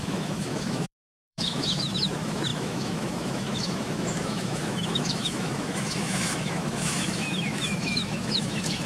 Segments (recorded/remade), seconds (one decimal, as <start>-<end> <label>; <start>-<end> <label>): 0.0-8.9 remade

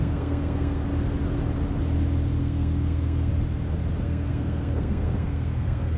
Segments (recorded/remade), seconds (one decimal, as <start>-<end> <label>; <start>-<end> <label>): 0.0-0.8 remade; 0.8-2.4 recorded; 2.4-3.3 remade; 3.3-4.0 recorded; 4.0-6.0 remade

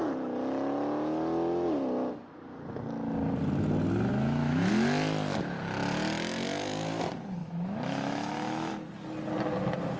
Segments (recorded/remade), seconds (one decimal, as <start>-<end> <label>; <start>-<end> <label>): 0.0-4.1 recorded; 4.1-4.7 remade; 4.7-7.4 recorded; 7.4-8.7 remade; 8.7-10.0 recorded

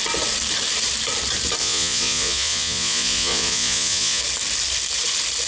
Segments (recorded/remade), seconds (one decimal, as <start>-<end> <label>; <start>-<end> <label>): 0.0-1.6 recorded; 1.6-4.2 remade; 4.2-5.5 recorded